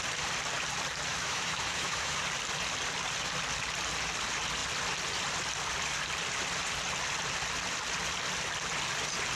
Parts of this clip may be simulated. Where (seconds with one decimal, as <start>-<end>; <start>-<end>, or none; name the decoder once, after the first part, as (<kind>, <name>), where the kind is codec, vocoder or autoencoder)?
1.1-2.2 (autoencoder, DAC-VAE)